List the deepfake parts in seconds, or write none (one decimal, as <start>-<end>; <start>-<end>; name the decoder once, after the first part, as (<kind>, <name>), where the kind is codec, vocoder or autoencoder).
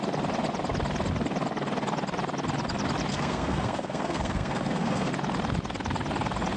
3.1-5.1 (codec, SNAC)